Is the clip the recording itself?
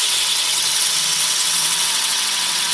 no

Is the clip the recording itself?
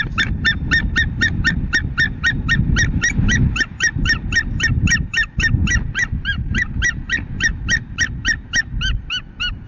yes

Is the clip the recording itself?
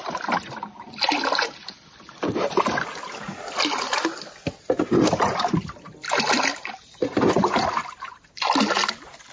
yes